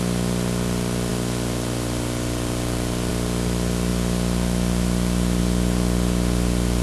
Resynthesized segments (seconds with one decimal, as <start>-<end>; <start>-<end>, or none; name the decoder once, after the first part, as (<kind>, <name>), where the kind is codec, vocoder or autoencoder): none